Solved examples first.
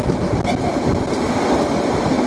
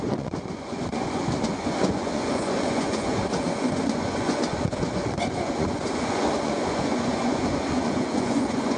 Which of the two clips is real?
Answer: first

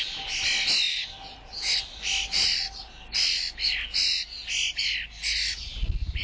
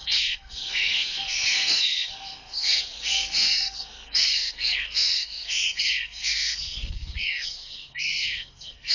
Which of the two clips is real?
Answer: first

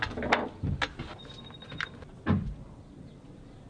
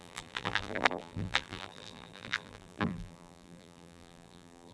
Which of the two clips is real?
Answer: first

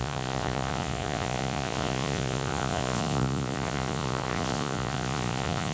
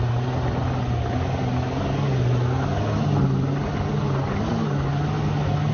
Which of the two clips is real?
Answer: second